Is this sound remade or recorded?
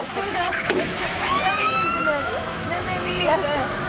remade